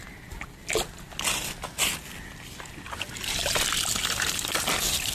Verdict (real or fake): real